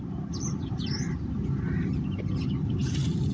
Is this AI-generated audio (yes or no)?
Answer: yes